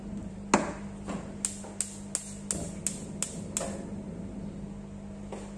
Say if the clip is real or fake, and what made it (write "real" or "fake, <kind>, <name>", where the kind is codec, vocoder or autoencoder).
real